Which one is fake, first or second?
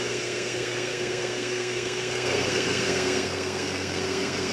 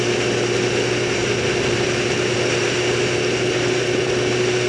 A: first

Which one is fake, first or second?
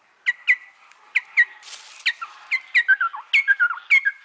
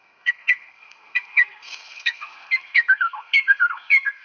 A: second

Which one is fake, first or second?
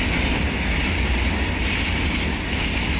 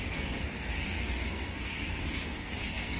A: second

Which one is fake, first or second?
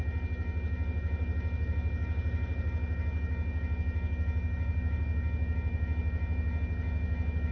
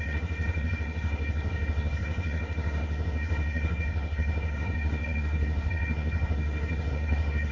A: second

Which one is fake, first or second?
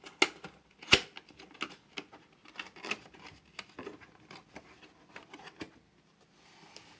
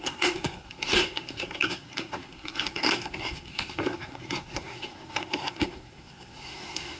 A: second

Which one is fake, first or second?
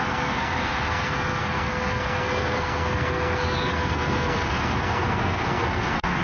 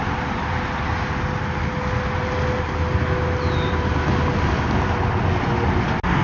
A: first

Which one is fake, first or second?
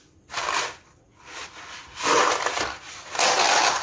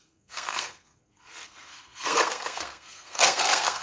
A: second